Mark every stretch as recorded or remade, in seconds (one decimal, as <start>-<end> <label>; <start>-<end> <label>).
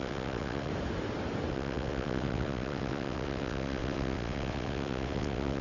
0.0-0.7 remade; 0.7-1.5 recorded; 1.5-5.6 remade